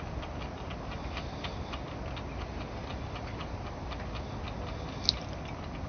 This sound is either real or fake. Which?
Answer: real